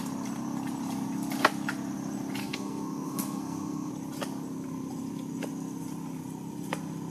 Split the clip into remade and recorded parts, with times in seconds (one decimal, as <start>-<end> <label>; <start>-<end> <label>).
0.0-2.4 recorded; 2.4-3.9 remade; 3.9-7.1 recorded